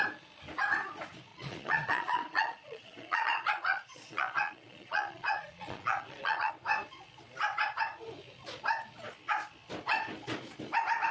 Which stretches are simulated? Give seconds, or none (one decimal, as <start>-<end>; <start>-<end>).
1.3-6.5